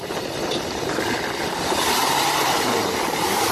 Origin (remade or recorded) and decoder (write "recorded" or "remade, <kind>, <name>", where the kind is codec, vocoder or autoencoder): recorded